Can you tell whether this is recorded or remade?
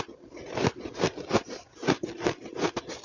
recorded